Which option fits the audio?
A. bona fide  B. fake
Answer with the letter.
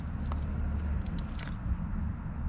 A